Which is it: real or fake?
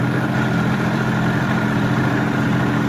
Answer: fake